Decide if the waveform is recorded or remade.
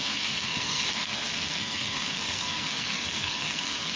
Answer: remade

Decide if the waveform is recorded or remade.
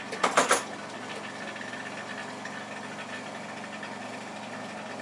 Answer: recorded